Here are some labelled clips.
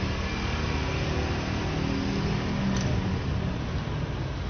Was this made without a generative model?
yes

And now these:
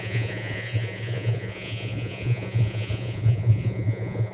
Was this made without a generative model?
no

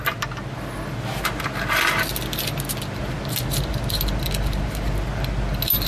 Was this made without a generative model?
yes